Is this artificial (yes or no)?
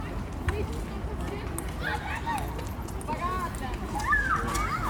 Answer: no